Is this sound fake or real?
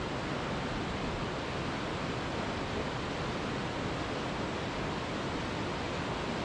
real